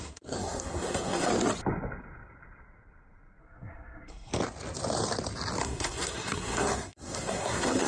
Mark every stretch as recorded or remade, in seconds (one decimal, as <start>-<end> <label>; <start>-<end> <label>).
0.0-1.3 remade; 1.3-3.4 recorded; 3.4-4.3 remade; 4.3-5.6 recorded; 5.6-7.9 remade